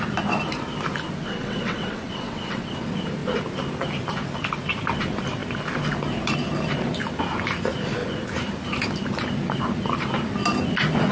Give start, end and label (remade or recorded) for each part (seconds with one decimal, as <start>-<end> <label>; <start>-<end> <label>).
0.0-1.2 recorded; 1.2-2.7 remade; 2.7-11.1 recorded